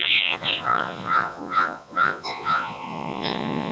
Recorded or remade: remade